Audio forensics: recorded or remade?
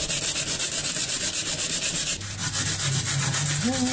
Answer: recorded